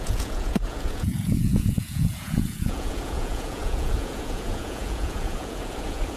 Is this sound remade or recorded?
remade